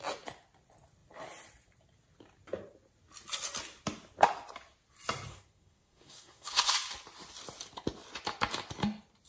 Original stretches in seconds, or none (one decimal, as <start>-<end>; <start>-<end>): 0.0-5.3; 6.7-9.3